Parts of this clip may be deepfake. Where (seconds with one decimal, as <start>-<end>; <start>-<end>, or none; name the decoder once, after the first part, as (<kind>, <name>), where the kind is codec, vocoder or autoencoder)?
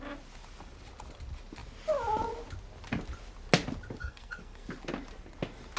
4.0-4.7 (codec, SNAC)